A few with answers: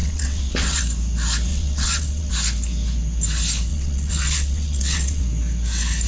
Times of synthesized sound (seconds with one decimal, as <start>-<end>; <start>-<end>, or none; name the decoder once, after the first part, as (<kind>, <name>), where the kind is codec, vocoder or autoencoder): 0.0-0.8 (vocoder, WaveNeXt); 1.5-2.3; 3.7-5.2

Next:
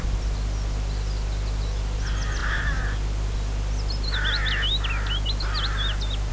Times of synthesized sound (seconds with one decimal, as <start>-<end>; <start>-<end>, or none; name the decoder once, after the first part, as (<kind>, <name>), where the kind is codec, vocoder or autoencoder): none

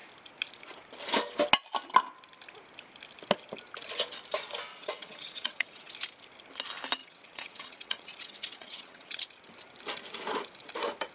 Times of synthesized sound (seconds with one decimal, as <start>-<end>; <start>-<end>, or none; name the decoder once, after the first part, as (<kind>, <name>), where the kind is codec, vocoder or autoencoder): 4.7-5.9 (vocoder, WaveNeXt); 7.0-9.2